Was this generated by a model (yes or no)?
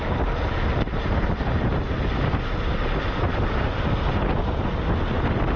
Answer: no